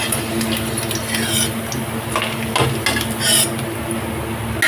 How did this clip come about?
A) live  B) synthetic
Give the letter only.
A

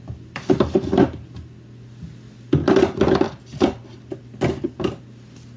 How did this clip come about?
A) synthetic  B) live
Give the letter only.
B